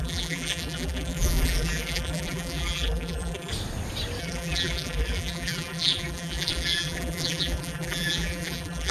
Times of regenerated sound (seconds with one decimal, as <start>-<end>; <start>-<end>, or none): 0.0-3.5; 4.2-8.9

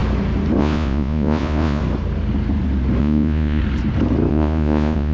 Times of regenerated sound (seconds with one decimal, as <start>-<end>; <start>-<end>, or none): 0.6-1.8; 3.0-3.6; 4.3-5.1

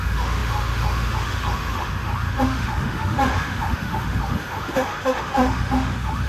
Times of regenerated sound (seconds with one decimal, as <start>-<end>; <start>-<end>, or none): 0.0-6.3

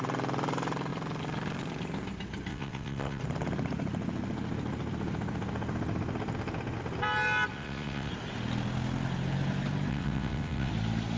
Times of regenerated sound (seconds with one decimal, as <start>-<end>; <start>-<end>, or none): 2.5-3.2; 7.5-8.1; 9.9-10.7

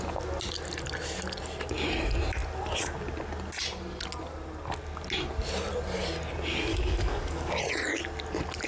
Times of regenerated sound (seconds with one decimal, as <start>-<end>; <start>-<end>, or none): 6.7-7.6

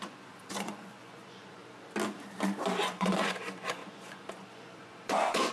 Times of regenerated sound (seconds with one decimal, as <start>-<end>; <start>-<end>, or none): 0.0-1.6; 2.8-5.5